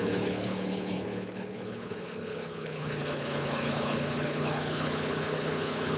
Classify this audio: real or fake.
fake